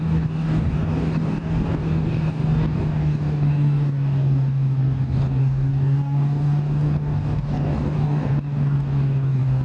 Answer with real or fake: fake